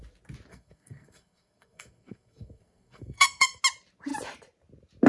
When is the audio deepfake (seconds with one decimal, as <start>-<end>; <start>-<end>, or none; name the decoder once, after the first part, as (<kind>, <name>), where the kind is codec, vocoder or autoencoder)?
0.5-3.6 (codec, SNAC)